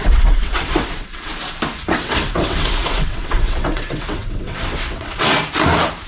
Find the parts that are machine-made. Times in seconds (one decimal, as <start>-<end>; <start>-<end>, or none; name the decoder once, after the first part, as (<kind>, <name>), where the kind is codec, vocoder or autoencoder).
0.0-1.3 (vocoder, WaveNeXt); 1.9-5.3